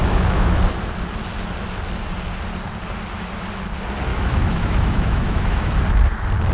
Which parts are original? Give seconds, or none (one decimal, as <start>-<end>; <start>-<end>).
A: 0.6-4.1; 5.7-6.5